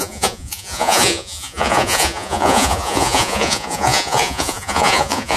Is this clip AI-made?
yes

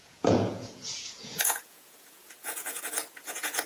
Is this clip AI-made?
yes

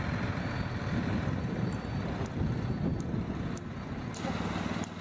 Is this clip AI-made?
no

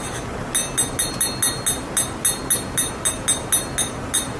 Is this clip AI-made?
no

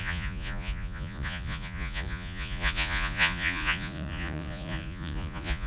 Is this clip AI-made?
yes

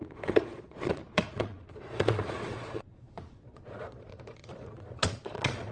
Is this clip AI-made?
yes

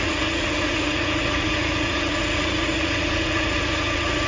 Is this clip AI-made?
yes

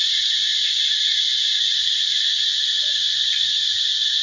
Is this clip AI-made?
no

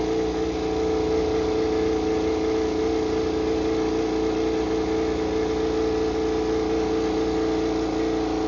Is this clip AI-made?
no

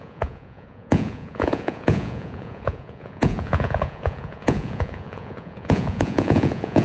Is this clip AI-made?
yes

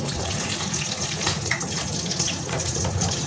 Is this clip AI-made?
yes